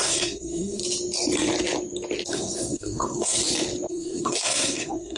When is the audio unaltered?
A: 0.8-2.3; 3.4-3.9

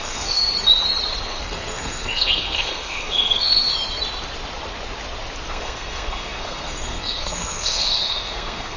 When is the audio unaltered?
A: 0.4-1.2; 3.7-5.5

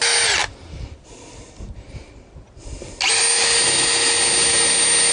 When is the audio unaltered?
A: 0.0-5.1

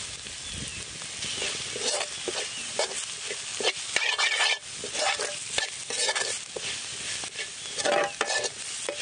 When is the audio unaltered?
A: 0.0-9.0

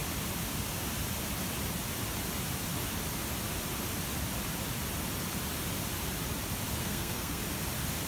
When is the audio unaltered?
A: 0.0-6.8; 7.4-8.1

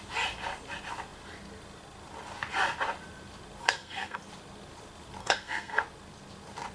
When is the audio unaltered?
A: 0.0-3.6; 4.2-5.2; 5.8-6.7